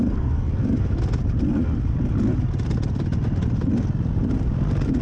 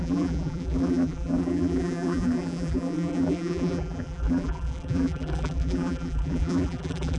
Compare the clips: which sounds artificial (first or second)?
second